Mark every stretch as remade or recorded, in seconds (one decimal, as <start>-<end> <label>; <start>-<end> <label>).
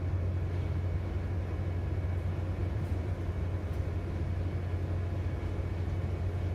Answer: 0.0-2.6 recorded; 2.6-3.1 remade; 3.1-6.5 recorded